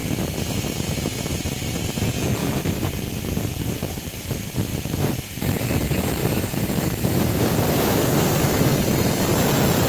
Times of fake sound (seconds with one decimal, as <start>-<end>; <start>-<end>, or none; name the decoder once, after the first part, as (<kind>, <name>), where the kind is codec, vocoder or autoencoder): 2.4-4.2 (vocoder, BigVGAN v2); 4.7-5.7; 6.2-9.3